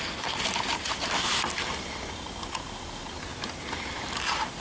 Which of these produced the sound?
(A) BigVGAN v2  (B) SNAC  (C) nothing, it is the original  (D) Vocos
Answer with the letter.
C